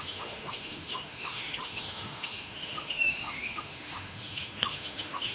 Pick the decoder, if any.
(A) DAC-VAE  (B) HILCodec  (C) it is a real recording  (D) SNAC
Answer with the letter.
A